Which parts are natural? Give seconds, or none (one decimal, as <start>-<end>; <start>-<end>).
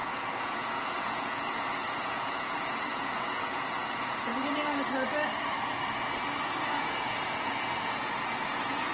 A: 4.3-6.8